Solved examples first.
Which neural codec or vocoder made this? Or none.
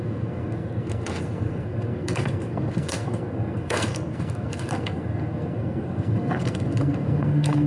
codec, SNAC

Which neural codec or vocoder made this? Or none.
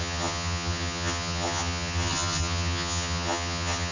vocoder, HiFi-GAN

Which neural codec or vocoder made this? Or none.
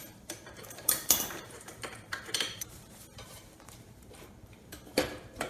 vocoder, BigVGAN v2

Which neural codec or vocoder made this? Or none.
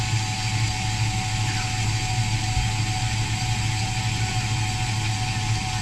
none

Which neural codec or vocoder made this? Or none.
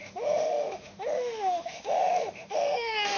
autoencoder, DAC-VAE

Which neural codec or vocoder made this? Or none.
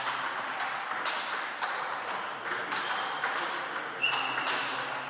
none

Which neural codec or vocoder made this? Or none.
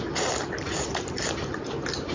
none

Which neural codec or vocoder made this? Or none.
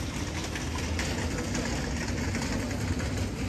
none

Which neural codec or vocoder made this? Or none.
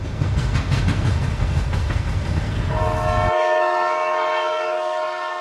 codec, SNAC